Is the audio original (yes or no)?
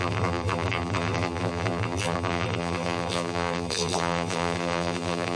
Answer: no